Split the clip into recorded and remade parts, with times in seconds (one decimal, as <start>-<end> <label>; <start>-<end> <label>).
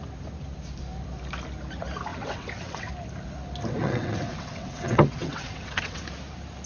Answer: 0.0-2.1 recorded; 2.1-2.9 remade; 2.9-3.8 recorded; 3.8-6.0 remade; 6.0-6.7 recorded